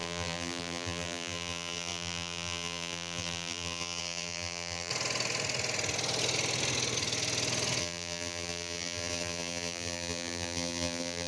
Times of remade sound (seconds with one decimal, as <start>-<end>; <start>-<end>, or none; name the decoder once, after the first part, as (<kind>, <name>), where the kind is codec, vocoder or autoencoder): 0.0-4.9 (vocoder, BigVGAN v2); 7.8-11.3